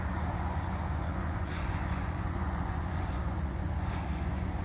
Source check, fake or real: fake